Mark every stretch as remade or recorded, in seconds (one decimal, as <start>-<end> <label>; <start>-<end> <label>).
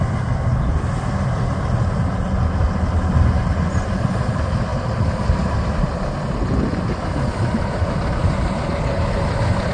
0.0-9.7 recorded